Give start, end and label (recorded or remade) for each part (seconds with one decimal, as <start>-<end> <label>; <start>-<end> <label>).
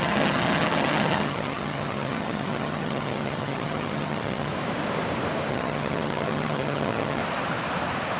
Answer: 0.0-4.5 remade; 4.5-5.5 recorded; 5.5-7.2 remade; 7.2-8.2 recorded